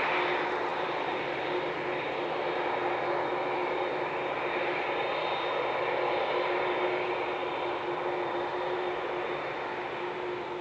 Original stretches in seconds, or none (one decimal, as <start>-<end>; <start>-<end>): 0.0-0.7; 1.2-7.4; 9.0-10.6